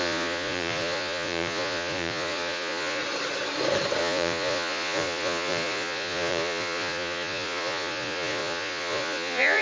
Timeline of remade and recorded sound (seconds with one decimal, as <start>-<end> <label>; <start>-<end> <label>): 0.0-3.0 remade; 3.0-4.0 recorded; 4.0-9.6 remade

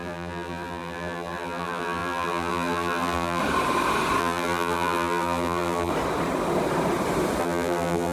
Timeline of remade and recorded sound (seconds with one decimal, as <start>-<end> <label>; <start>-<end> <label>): 0.0-3.4 remade; 3.4-4.2 recorded; 4.2-5.9 remade; 5.9-7.4 recorded; 7.4-8.1 remade